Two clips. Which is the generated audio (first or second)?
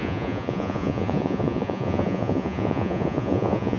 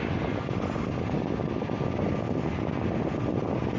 first